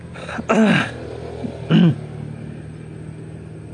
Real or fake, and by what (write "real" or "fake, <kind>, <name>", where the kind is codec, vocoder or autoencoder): real